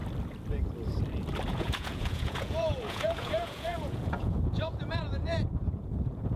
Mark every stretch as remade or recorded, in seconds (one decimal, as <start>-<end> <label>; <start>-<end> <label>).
0.0-1.5 recorded; 1.5-6.4 remade